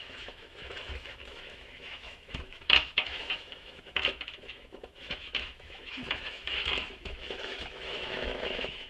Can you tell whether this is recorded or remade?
remade